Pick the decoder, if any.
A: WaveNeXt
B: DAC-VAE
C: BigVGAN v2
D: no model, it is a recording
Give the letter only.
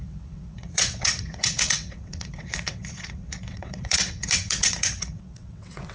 A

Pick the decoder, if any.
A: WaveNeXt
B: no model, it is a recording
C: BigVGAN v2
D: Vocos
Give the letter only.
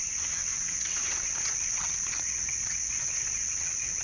A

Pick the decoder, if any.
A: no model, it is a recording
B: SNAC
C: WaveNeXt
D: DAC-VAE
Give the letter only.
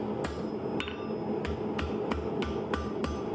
A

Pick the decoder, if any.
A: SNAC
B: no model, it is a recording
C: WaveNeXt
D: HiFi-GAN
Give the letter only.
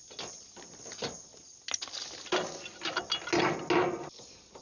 B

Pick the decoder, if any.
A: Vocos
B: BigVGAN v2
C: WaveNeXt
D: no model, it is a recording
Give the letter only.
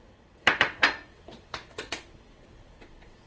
C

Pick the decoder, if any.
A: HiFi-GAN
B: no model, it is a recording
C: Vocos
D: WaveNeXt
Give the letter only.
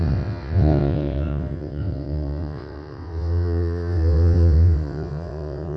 D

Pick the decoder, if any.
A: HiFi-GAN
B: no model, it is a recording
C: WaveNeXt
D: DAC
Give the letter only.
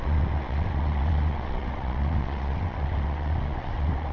C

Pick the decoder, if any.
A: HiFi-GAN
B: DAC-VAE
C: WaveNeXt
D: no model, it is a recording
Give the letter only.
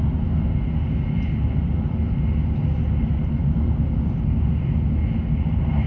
D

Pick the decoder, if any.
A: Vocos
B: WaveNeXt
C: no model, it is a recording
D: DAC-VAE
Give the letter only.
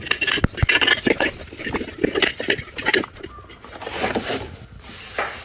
C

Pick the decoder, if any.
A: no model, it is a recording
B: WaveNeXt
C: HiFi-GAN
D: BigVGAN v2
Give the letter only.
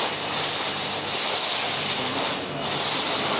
A